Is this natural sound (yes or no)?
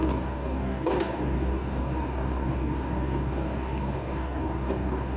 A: no